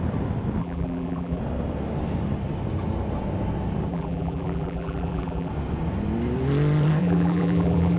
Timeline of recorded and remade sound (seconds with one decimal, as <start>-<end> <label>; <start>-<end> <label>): 0.0-0.6 recorded; 0.6-1.4 remade; 1.4-3.9 recorded; 3.9-5.5 remade; 5.5-7.0 recorded; 7.0-8.0 remade